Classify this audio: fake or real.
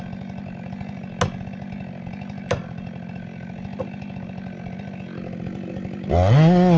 real